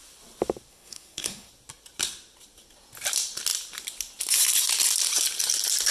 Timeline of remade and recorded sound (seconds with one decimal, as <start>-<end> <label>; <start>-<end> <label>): 0.0-0.7 recorded; 0.7-1.5 remade; 1.5-5.9 recorded